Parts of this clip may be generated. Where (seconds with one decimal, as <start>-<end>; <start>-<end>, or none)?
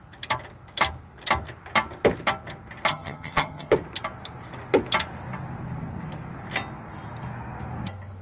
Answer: 2.9-3.7